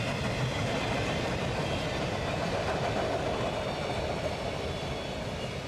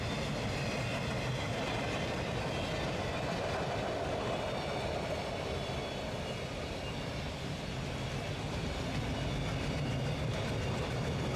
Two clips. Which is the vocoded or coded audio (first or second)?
first